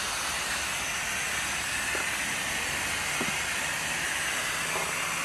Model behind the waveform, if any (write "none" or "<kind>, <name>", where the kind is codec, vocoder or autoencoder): none